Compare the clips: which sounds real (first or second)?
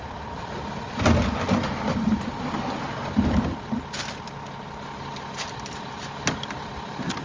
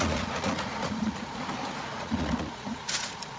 first